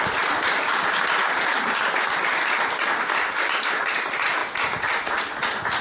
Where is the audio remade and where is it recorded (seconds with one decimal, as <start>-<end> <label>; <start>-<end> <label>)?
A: 0.0-4.4 recorded; 4.4-5.2 remade; 5.2-5.8 recorded